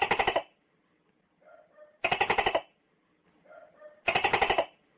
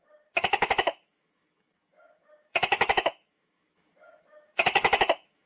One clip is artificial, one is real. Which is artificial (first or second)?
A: second